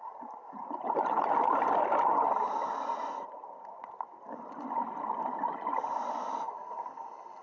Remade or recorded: recorded